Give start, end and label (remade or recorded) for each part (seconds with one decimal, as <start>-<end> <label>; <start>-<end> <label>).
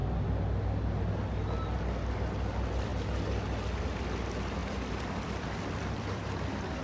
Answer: 0.0-4.6 recorded; 4.6-6.8 remade